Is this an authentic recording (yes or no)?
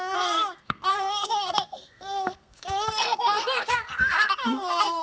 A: no